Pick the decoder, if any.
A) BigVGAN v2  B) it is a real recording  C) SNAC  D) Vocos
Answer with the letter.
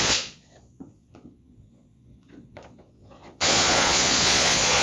D